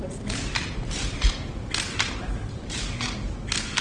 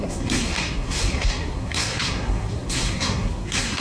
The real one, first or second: first